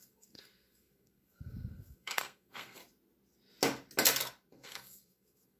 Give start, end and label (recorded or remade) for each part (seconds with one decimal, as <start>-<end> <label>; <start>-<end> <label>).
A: 0.0-2.8 remade; 2.8-4.5 recorded; 4.5-5.6 remade